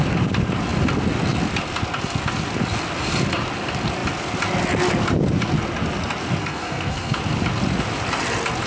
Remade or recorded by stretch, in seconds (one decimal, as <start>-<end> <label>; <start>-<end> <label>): 0.0-6.4 recorded; 6.4-7.2 remade; 7.2-8.7 recorded